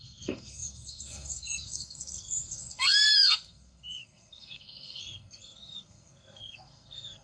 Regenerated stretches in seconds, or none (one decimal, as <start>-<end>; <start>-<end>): 0.0-7.2